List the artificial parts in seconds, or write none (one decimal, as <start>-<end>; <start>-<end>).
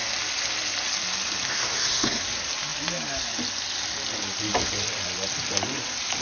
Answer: 1.5-2.2